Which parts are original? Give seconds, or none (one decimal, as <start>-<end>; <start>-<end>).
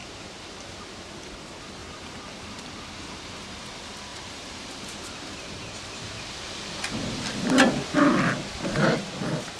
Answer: 0.8-1.8; 2.7-4.1; 6.1-9.6